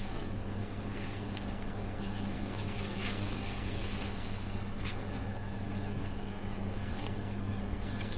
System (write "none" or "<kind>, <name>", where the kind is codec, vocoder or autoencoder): codec, SNAC